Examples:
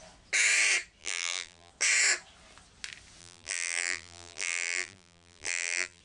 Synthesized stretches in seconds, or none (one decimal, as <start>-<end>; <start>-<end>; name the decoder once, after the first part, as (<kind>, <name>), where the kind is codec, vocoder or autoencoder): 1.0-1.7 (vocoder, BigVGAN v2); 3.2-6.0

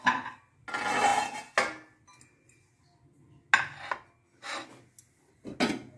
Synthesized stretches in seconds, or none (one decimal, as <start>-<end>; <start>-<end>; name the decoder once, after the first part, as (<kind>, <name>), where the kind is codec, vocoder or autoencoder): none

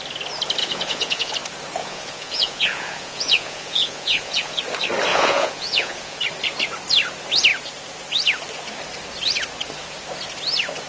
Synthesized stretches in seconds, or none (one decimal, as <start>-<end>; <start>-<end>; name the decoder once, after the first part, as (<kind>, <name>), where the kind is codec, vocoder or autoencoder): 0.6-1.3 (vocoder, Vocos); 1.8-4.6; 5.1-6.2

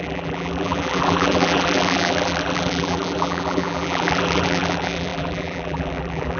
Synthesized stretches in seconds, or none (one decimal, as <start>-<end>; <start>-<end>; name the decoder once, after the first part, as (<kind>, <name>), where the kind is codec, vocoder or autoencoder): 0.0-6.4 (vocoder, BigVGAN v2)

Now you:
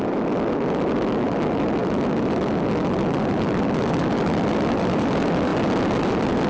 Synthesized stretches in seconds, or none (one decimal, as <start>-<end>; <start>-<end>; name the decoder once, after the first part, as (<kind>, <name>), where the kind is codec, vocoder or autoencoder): none

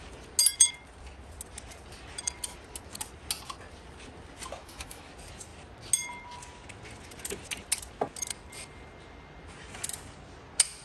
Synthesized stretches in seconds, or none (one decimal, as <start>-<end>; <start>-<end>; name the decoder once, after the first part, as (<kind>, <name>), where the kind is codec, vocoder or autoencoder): 4.6-5.1 (autoencoder, DAC-VAE)

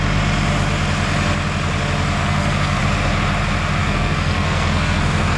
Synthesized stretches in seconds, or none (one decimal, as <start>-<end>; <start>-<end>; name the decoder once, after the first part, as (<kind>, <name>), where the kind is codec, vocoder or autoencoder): 2.2-2.8 (codec, SNAC); 3.8-5.4